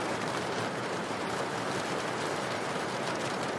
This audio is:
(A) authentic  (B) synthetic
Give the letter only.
B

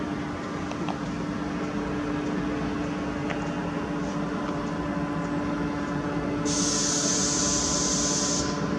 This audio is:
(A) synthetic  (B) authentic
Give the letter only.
B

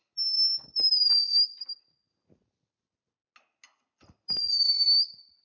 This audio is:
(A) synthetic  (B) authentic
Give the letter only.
B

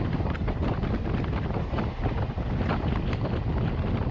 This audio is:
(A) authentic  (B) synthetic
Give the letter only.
A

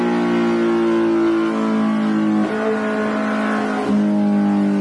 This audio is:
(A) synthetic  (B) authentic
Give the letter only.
B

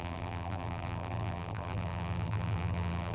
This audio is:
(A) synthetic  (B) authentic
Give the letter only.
A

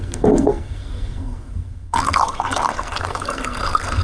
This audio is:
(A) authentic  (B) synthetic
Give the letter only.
B